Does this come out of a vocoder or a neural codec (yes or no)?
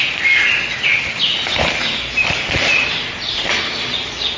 no